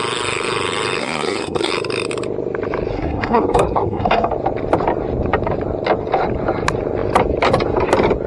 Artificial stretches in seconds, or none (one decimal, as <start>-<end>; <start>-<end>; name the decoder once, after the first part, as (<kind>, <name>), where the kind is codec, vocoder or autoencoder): 1.0-1.7 (codec, SNAC); 2.9-4.3